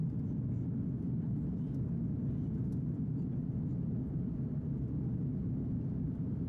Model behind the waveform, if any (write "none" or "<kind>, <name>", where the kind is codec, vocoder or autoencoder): none